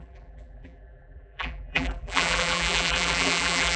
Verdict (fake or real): fake